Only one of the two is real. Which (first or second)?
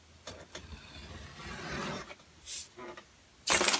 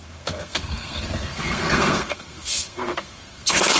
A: first